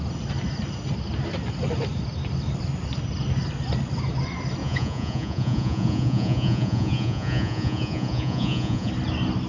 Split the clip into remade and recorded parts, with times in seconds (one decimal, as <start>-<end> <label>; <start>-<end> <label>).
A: 0.0-4.6 recorded; 4.6-8.9 remade; 8.9-9.5 recorded